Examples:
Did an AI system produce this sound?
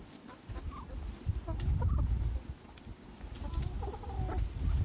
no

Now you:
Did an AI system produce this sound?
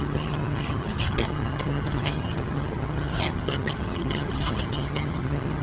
yes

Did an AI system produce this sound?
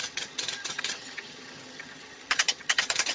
yes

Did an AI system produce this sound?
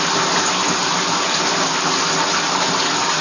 no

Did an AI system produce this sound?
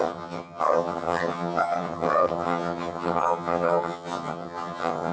yes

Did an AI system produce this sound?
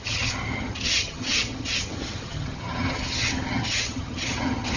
yes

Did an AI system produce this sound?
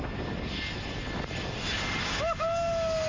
no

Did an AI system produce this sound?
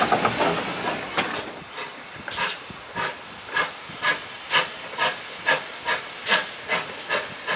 no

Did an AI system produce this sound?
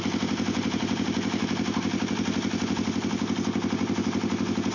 no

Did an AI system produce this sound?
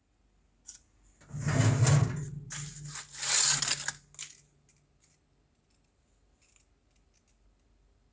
no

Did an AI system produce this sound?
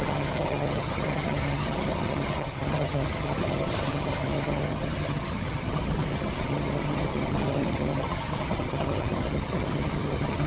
yes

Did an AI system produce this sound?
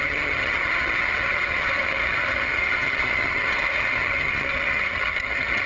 yes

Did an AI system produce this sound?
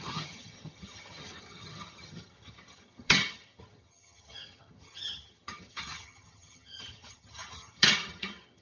yes